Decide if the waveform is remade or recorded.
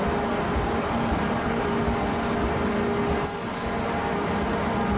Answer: recorded